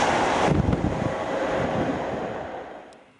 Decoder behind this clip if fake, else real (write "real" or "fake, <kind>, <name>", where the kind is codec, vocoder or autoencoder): real